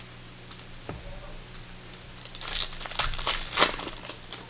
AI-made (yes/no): no